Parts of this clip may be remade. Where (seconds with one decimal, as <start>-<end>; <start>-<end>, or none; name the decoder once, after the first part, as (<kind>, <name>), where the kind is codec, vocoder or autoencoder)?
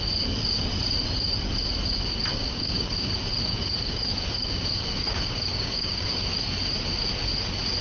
2.4-3.1 (codec, DAC); 3.5-6.1